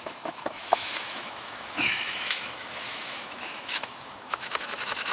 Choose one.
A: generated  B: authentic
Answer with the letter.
A